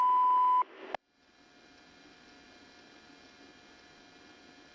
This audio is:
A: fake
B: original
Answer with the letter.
B